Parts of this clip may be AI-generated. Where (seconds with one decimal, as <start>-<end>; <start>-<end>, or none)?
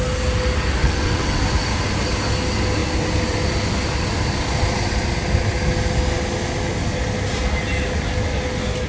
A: 0.8-1.4